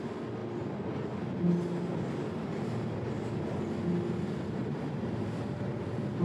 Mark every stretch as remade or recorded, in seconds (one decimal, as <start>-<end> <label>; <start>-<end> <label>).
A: 0.0-4.6 recorded; 4.6-6.2 remade